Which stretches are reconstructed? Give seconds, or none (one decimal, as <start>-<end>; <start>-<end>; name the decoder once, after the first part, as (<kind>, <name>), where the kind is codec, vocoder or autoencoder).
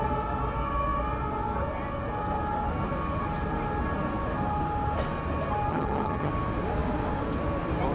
5.7-6.3 (vocoder, HiFi-GAN)